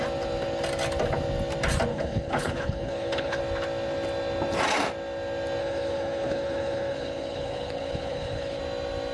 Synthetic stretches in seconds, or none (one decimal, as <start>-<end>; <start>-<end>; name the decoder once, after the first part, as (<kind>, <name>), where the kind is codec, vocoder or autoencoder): 1.9-3.4 (codec, HILCodec); 5.6-8.6

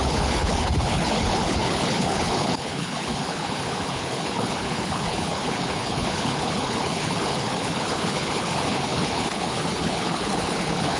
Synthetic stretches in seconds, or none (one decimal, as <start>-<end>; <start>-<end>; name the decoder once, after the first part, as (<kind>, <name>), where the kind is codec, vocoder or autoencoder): 0.0-11.0 (codec, HILCodec)

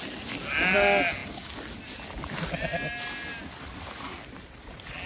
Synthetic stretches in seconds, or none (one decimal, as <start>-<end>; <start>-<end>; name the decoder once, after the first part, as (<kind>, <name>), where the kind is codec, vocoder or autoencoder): none

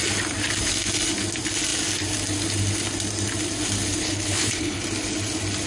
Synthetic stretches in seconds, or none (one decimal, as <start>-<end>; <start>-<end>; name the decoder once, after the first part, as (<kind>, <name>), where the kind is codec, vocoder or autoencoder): 4.0-4.8 (codec, HILCodec)

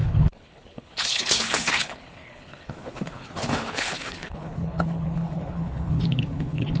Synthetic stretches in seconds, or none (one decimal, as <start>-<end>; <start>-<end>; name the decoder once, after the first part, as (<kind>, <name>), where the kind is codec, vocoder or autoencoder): 0.0-6.8 (codec, HILCodec)

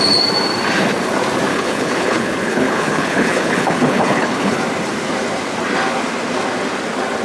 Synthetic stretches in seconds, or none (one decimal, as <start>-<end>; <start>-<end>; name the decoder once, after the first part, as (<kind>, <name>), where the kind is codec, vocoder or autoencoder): 1.5-4.6 (codec, HILCodec)

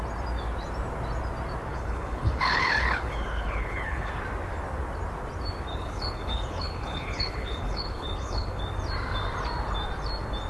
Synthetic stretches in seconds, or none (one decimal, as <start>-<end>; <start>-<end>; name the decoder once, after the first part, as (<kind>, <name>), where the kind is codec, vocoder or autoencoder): 1.7-4.1 (codec, HILCodec); 5.7-8.6